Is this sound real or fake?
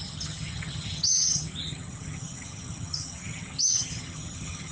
fake